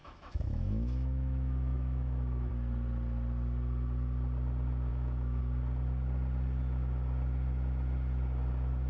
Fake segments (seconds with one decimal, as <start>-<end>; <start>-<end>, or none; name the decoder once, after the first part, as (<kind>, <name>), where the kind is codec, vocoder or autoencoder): 0.0-2.5 (autoencoder, DAC-VAE); 4.9-5.4